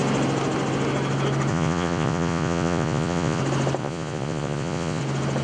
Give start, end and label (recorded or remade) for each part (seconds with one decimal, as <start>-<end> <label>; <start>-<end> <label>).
0.0-1.5 recorded; 1.5-3.4 remade; 3.4-3.8 recorded; 3.8-5.0 remade; 5.0-5.4 recorded